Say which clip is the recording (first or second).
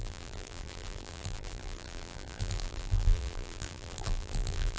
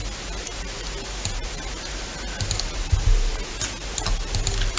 second